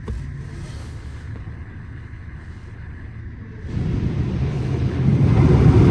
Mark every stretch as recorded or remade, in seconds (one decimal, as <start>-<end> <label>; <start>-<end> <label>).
0.0-0.8 recorded; 0.8-3.2 remade; 3.2-4.4 recorded; 4.4-5.0 remade; 5.0-5.9 recorded